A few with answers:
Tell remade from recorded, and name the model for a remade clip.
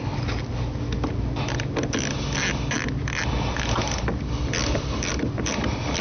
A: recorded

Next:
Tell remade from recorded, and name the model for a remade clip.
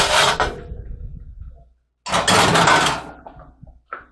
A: recorded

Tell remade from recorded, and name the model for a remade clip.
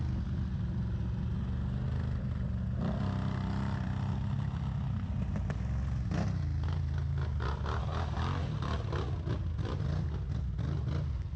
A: recorded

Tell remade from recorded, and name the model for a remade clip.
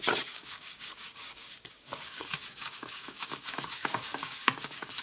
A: remade, codec, DAC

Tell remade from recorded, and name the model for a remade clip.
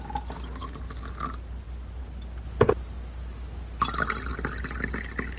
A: recorded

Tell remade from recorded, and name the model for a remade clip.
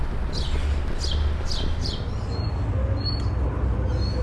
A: recorded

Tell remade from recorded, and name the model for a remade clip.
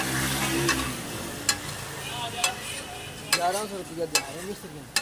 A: recorded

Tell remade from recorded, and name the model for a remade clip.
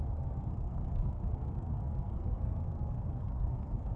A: remade, codec, SNAC